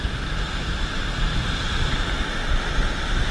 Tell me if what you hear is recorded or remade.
recorded